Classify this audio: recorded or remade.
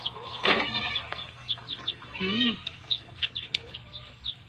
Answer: remade